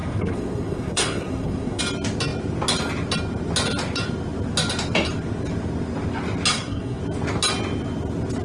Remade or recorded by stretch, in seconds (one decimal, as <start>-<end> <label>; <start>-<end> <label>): 0.0-1.8 remade; 1.8-6.5 recorded; 6.5-7.0 remade; 7.0-8.4 recorded